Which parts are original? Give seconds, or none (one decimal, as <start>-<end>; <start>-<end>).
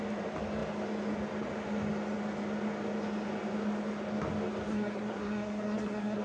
0.0-4.7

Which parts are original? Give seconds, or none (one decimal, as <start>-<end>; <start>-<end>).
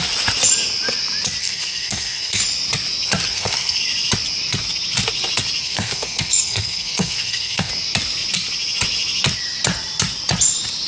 0.0-1.4; 2.4-3.3; 3.8-5.6; 7.7-10.9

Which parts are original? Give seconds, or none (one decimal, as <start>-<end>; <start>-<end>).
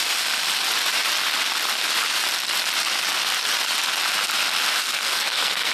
0.0-4.7